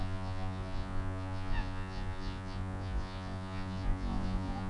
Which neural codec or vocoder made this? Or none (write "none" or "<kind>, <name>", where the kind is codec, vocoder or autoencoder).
vocoder, Vocos